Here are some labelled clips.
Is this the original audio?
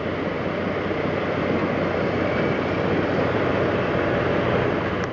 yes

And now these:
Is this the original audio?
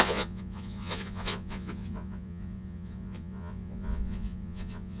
no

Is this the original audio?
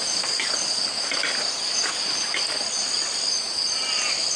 yes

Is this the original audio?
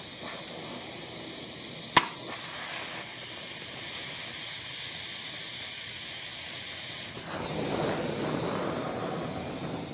yes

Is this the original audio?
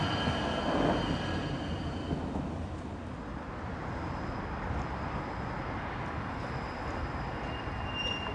yes